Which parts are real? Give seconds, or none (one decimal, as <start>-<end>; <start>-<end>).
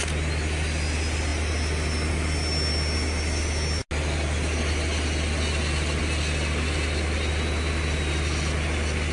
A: 0.0-9.1